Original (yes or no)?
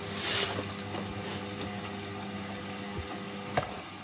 yes